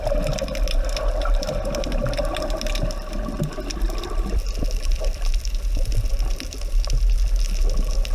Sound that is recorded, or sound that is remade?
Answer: recorded